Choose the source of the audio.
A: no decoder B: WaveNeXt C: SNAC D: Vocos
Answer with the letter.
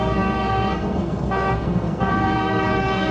C